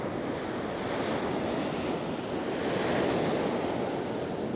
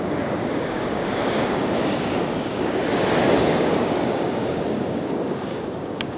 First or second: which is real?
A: first